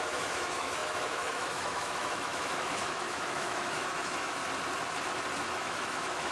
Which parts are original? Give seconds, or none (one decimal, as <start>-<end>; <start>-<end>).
4.4-5.5

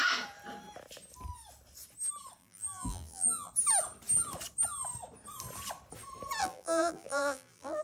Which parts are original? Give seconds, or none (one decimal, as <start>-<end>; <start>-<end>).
0.0-2.4; 3.5-6.4

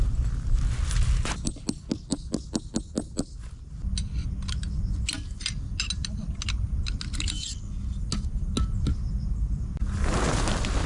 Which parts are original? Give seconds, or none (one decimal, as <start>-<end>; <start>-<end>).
0.0-10.9

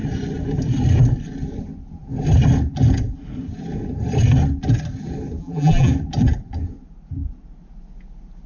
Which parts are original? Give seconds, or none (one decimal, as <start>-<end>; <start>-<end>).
0.0-5.4; 5.9-8.5

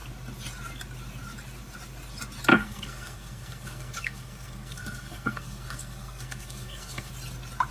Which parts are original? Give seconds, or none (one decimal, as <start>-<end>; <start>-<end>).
0.0-2.5; 7.1-7.7